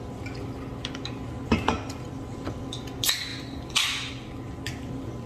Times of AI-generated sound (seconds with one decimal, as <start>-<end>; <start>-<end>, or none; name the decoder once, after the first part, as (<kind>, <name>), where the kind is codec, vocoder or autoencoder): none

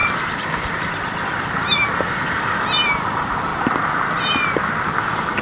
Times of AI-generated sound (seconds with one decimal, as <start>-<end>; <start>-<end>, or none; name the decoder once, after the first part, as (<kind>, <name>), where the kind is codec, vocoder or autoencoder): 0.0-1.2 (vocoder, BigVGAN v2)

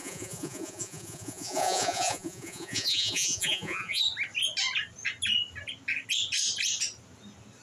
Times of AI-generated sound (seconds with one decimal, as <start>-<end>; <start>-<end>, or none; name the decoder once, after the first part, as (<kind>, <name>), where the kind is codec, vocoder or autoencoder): 0.0-4.0 (vocoder, Vocos)